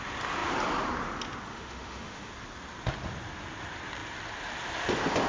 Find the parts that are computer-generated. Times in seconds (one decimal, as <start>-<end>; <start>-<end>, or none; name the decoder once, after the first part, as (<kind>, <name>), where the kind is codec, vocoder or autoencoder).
1.5-2.3 (autoencoder, DAC-VAE)